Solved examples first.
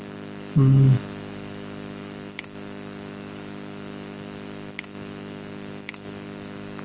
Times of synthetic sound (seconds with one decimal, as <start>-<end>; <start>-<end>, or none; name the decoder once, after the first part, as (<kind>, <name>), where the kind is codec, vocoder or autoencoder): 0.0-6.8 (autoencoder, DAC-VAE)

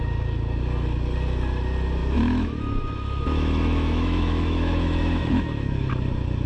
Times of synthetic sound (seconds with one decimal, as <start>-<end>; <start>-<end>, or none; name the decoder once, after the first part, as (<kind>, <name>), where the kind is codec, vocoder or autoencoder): 2.0-5.9 (autoencoder, DAC-VAE)

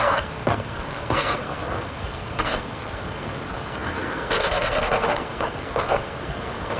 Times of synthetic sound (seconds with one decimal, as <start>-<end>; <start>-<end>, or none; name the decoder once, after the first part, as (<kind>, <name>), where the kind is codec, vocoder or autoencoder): 0.0-6.8 (codec, SNAC)

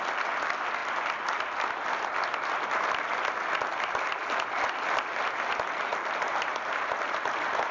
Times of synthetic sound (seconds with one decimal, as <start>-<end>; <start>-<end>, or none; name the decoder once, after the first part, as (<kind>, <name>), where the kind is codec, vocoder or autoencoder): none

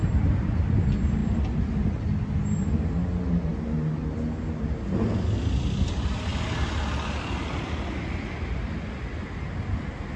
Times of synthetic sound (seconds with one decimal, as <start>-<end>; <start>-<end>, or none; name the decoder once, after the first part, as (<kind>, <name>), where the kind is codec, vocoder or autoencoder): none

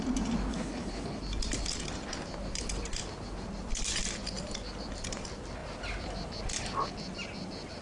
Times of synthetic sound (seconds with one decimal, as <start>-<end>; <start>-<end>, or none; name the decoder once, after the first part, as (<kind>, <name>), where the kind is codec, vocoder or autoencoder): 0.5-1.2 (codec, HILCodec)